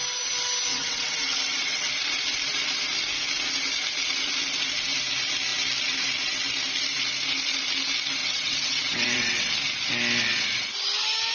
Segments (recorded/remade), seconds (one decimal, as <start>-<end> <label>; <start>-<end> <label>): 0.0-0.7 recorded; 0.7-1.9 remade; 1.9-8.2 recorded; 8.2-9.5 remade; 9.5-11.3 recorded